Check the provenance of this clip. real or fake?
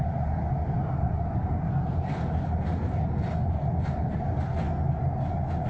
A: real